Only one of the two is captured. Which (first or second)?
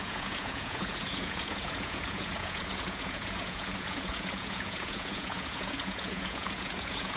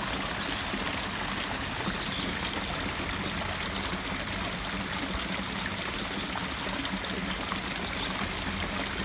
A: second